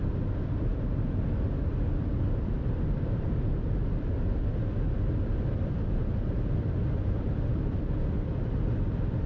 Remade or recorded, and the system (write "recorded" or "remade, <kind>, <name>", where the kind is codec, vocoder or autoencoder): remade, vocoder, BigVGAN v2